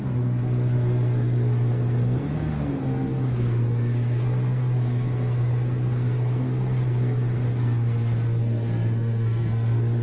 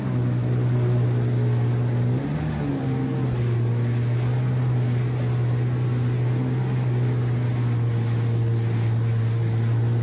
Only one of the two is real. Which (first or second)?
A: second